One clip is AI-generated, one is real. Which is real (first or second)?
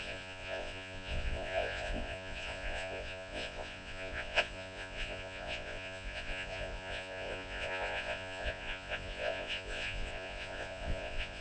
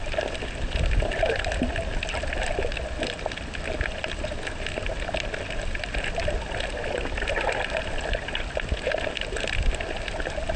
second